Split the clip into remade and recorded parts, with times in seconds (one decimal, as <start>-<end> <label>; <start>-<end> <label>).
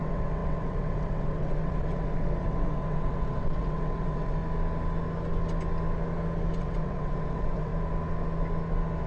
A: 0.0-4.4 remade; 4.4-6.6 recorded; 6.6-7.7 remade; 7.7-9.1 recorded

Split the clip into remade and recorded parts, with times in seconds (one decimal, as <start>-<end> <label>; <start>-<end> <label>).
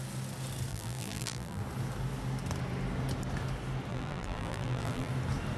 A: 0.0-0.7 recorded; 0.7-1.6 remade; 1.6-3.9 recorded; 3.9-5.1 remade; 5.1-5.6 recorded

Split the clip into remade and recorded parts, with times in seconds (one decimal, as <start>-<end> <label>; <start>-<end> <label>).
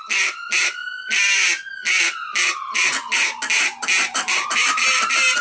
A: 0.0-5.4 recorded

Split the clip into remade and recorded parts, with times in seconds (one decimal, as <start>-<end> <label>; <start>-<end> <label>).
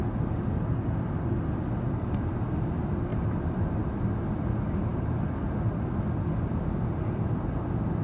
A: 0.0-3.1 recorded; 3.1-3.8 remade; 3.8-8.0 recorded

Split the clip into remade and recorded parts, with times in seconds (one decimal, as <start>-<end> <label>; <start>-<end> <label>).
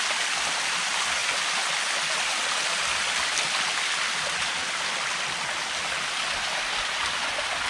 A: 0.0-7.7 recorded